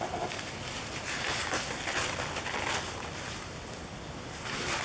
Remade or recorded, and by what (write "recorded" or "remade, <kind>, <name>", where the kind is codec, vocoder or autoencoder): recorded